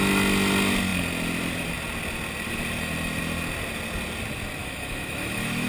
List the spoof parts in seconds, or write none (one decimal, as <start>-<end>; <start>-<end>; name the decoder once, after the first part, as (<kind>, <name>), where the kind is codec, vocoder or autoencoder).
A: 4.6-5.7 (autoencoder, DAC-VAE)